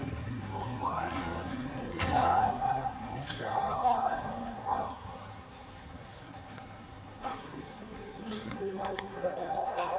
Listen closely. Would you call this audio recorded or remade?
remade